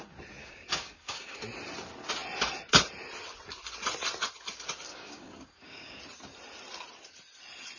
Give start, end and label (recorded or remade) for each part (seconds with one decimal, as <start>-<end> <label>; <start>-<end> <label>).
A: 0.0-0.4 recorded; 0.4-1.4 remade; 1.4-4.9 recorded; 4.9-6.0 remade; 6.0-7.8 recorded